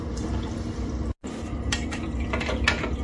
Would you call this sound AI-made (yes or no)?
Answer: no